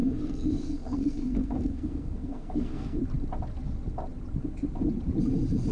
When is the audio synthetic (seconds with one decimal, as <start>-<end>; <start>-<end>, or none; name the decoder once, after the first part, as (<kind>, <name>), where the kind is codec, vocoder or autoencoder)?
0.0-3.0 (codec, SNAC)